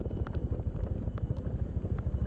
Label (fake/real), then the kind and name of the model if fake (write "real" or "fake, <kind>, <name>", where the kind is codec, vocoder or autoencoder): real